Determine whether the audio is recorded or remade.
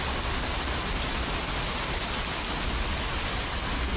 recorded